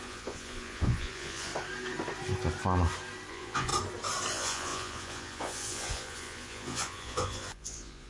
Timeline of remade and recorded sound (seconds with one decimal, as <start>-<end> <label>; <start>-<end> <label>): 0.0-1.5 remade; 1.5-3.3 recorded; 3.3-3.7 remade; 3.7-4.3 recorded; 4.3-8.1 remade